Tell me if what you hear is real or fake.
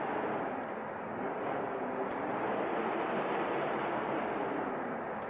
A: real